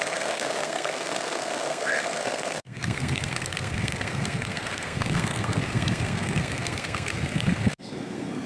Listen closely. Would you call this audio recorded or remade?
remade